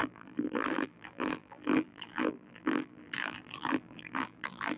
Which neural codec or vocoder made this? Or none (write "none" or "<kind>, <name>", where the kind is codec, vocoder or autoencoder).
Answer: vocoder, BigVGAN v2